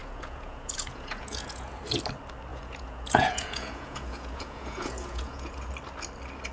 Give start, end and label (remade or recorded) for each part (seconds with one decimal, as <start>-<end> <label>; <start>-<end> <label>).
0.0-1.8 remade; 1.8-2.5 recorded; 2.5-5.7 remade; 5.7-6.5 recorded